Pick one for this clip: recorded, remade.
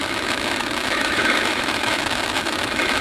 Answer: remade